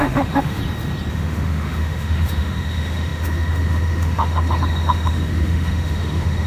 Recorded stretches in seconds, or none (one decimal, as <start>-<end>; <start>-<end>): 0.6-1.1